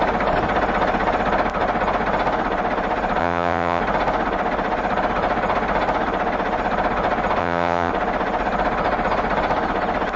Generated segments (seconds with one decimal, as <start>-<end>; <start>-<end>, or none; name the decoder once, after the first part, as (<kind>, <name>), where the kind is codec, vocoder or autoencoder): 3.2-3.8 (vocoder, HiFi-GAN); 7.4-7.9